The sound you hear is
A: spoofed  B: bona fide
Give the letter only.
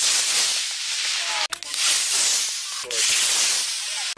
B